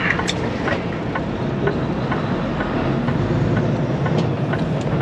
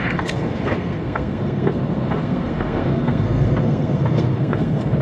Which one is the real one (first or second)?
first